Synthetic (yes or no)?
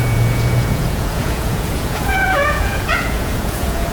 yes